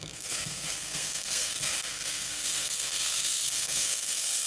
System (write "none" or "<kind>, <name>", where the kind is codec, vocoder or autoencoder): codec, SNAC